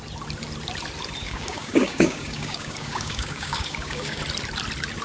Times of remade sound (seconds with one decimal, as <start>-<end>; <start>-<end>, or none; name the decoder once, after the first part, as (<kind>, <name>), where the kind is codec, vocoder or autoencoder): 1.2-4.2 (codec, DAC)